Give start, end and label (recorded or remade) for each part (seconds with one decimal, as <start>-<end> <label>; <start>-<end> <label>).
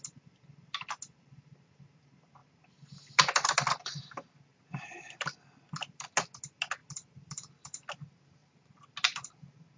0.0-6.8 recorded; 6.8-7.5 remade; 7.5-9.8 recorded